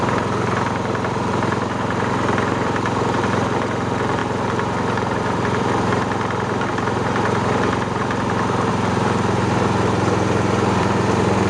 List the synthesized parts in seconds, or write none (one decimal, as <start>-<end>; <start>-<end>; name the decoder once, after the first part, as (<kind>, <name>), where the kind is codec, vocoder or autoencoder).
0.0-11.5 (vocoder, BigVGAN v2)